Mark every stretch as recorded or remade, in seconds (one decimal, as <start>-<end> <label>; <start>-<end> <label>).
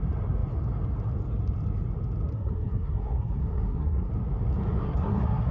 0.0-2.3 recorded; 2.3-4.1 remade; 4.1-4.8 recorded; 4.8-5.5 remade